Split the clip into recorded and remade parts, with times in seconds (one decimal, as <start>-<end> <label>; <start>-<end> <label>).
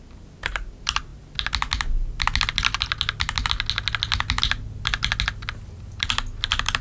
0.0-6.8 recorded